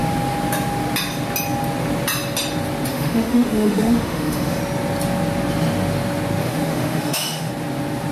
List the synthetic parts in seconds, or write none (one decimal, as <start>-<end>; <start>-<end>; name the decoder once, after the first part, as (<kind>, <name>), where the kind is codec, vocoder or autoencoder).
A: 2.9-4.6 (autoencoder, DAC-VAE); 6.4-7.5